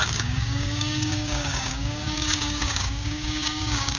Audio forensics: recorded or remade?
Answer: remade